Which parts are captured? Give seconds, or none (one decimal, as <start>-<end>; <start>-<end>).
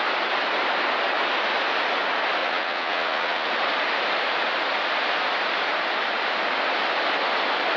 0.0-2.4; 3.5-7.8